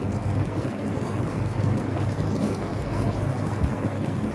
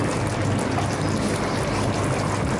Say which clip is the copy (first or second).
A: first